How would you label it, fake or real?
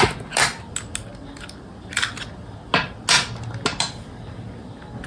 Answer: real